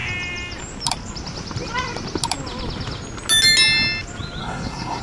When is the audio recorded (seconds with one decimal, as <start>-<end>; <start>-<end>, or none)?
0.0-4.4